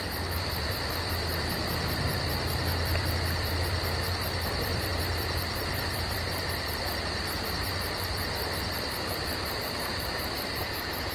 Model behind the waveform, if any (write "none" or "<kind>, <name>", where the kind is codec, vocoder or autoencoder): vocoder, BigVGAN v2